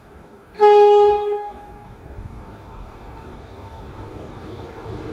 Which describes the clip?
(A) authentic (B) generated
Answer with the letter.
B